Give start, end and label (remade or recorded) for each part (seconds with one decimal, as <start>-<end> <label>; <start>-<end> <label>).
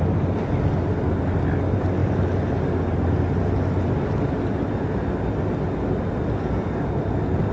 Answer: 0.0-7.5 recorded